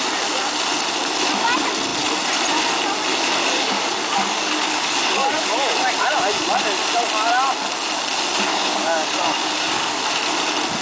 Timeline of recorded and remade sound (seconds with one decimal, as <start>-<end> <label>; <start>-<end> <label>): 0.0-3.4 recorded; 3.4-5.7 remade; 5.7-8.5 recorded; 8.5-10.0 remade; 10.0-10.8 recorded